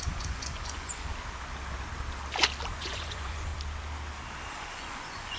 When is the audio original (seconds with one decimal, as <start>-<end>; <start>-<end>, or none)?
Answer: 1.1-2.7; 3.5-4.5